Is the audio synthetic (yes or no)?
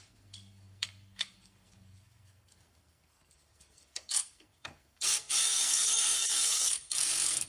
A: yes